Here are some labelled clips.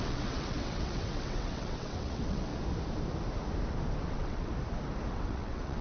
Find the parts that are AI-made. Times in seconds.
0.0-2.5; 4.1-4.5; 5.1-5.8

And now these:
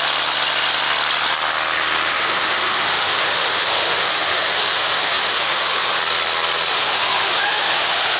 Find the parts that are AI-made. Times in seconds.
2.1-6.0; 6.7-8.2

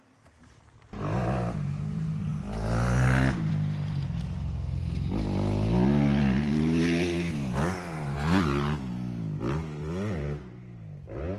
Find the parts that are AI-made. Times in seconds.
none